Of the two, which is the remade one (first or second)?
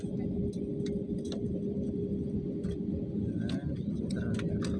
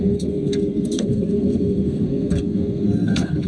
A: second